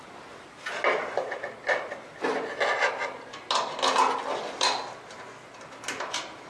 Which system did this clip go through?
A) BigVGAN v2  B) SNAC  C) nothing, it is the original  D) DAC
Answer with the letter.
C